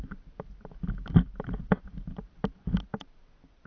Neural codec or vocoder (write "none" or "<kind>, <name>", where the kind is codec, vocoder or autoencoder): none